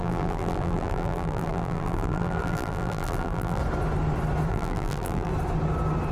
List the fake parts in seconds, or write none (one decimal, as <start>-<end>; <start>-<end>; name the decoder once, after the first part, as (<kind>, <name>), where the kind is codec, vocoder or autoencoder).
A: 0.0-3.6 (vocoder, BigVGAN v2); 4.5-5.3